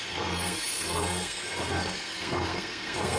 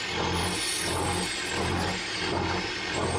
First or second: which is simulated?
first